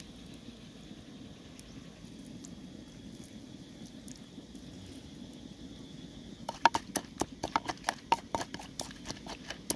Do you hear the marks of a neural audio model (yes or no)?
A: no